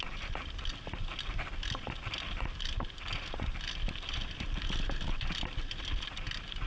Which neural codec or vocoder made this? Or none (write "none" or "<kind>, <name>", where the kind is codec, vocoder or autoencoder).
none